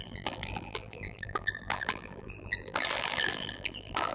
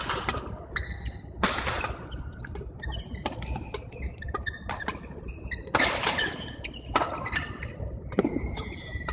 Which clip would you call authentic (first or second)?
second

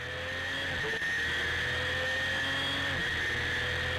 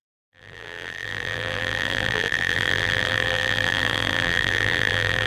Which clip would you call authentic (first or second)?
first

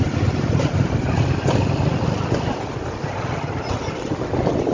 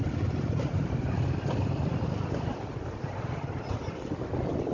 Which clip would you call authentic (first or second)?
first